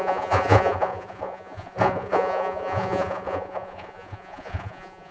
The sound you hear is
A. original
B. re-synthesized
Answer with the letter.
B